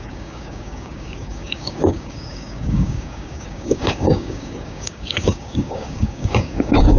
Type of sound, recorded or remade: remade